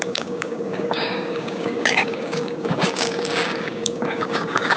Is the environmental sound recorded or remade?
remade